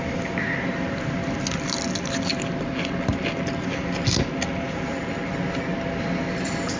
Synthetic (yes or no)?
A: no